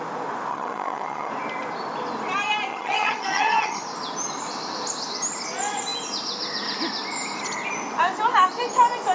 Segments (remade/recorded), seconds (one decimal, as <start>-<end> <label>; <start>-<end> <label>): 0.0-0.5 recorded; 0.5-1.3 remade; 1.3-2.7 recorded; 2.7-3.8 remade; 3.8-9.1 recorded